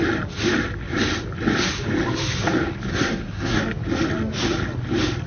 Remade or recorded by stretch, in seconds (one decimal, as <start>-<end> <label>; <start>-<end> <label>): 0.0-2.9 recorded; 2.9-3.6 remade; 3.6-5.3 recorded